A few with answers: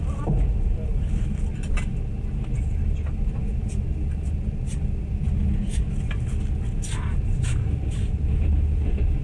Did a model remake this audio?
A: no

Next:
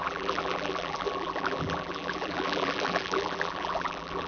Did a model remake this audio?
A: yes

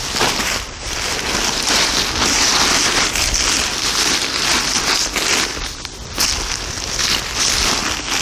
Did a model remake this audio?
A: no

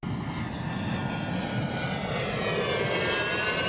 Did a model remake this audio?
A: no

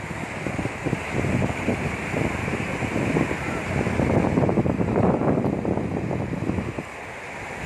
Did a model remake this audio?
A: no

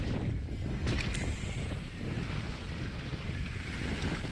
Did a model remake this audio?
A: no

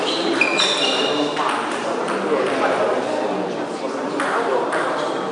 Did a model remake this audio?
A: no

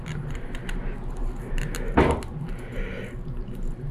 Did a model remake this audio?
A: no